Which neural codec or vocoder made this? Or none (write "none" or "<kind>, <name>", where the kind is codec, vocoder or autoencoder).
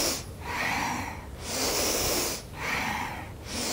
none